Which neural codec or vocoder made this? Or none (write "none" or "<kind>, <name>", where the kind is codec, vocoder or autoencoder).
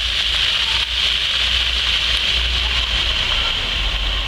none